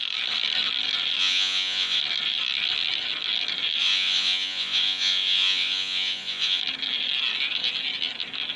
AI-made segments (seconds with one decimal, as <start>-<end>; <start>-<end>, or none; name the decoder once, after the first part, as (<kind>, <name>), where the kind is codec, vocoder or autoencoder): 1.2-2.0 (vocoder, Vocos); 3.8-6.6